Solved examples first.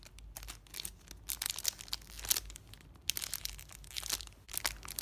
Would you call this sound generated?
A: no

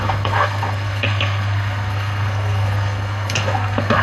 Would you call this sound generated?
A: yes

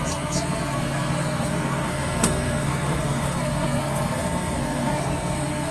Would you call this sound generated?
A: yes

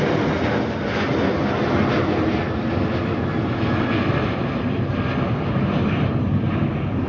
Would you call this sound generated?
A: no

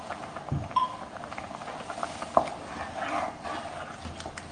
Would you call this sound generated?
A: no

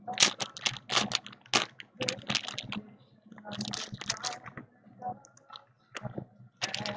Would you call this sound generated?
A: no